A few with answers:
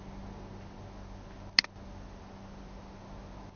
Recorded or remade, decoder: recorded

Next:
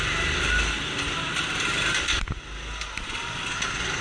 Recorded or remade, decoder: recorded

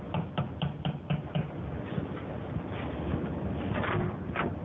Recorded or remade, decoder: recorded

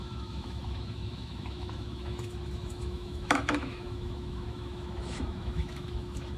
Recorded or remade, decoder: remade, autoencoder, DAC-VAE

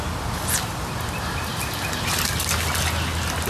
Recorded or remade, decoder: recorded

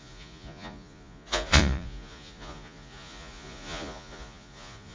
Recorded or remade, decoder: remade, vocoder, Vocos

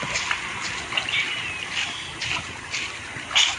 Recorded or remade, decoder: recorded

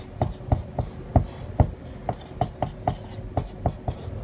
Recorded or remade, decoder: recorded